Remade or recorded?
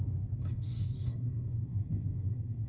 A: remade